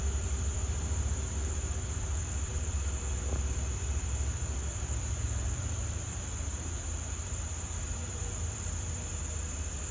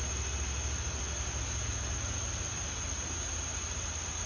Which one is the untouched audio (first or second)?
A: second